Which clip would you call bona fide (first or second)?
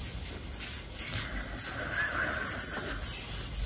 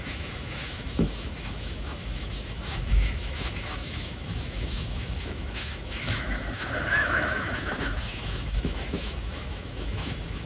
first